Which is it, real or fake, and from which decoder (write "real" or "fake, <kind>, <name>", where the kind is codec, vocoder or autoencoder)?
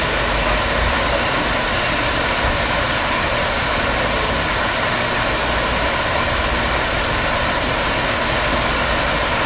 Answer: real